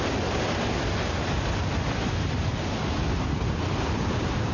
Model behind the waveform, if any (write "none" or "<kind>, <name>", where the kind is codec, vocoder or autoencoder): none